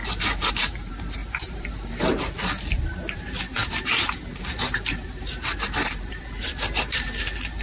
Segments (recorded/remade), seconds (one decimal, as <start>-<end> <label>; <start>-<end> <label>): 0.0-7.6 remade